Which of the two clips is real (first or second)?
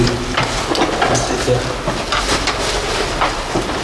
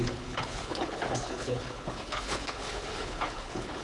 first